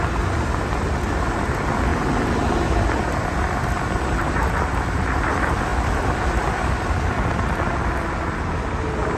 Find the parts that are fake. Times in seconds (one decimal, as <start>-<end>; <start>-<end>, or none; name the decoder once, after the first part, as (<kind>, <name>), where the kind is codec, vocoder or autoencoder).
none